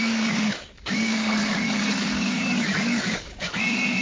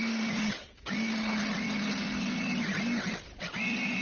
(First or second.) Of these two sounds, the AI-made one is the first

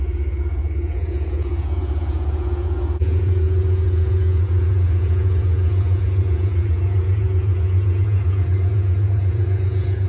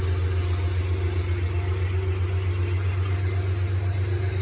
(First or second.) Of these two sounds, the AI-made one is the first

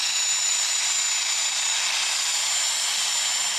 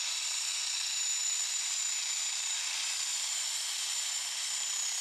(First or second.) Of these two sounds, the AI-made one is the second